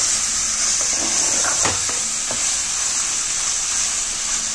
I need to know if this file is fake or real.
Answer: real